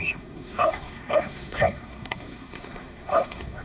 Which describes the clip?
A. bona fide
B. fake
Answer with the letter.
B